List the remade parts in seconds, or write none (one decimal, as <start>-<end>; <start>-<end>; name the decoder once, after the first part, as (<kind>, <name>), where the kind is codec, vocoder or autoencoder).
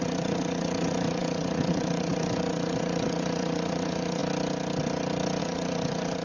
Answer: 0.0-4.2 (vocoder, Vocos); 5.4-6.2